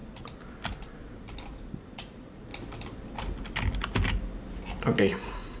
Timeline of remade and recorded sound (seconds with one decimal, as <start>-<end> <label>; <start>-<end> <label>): 0.0-1.6 recorded; 1.6-2.5 remade; 2.5-5.0 recorded; 5.0-5.6 remade